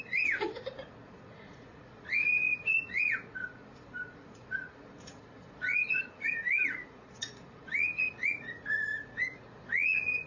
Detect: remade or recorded remade